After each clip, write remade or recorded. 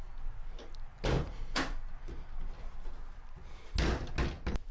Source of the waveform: recorded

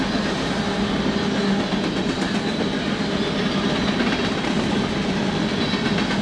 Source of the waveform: recorded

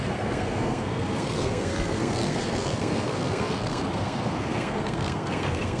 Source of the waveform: remade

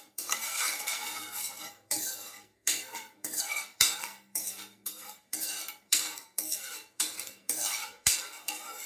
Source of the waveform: remade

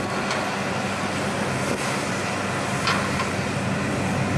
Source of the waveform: recorded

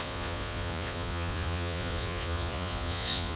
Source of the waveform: remade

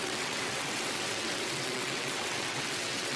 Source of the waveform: remade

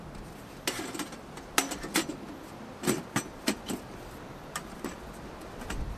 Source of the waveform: recorded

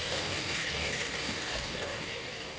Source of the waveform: remade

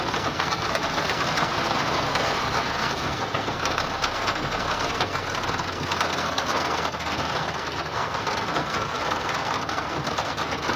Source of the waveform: remade